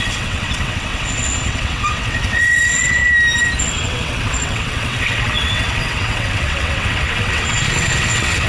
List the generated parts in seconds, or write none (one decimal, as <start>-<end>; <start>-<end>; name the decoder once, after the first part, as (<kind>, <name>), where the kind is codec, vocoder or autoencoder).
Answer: 0.0-3.0 (vocoder, WaveNeXt); 3.6-8.5

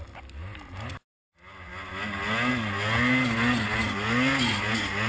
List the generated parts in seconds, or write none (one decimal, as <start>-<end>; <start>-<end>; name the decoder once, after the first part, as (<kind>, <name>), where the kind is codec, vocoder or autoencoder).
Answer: none

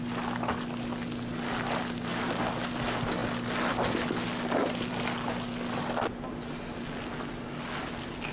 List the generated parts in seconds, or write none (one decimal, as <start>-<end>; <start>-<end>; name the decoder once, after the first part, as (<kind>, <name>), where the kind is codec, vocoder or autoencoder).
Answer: none

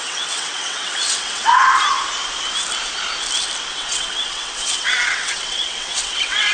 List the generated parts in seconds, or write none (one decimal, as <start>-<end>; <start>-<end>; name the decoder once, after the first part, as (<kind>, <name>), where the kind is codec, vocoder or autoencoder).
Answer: 0.0-1.5 (vocoder, WaveNeXt); 3.7-6.5

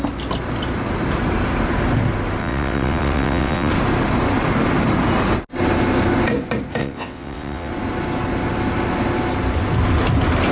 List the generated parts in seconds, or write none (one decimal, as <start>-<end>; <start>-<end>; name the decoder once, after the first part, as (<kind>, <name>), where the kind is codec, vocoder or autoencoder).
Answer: 2.4-3.7 (vocoder, WaveNeXt); 6.8-7.7